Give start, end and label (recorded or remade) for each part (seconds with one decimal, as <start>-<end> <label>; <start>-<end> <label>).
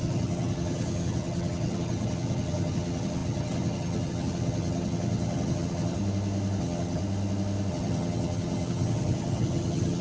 0.0-6.0 remade; 6.0-6.6 recorded; 6.6-7.0 remade; 7.0-7.7 recorded; 7.7-10.0 remade